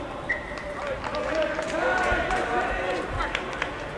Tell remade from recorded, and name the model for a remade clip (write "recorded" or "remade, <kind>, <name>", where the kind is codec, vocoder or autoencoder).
recorded